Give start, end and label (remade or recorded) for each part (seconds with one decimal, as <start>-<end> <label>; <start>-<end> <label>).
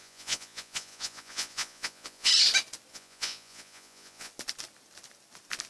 0.0-2.3 remade; 2.3-2.9 recorded; 2.9-4.3 remade; 4.3-5.7 recorded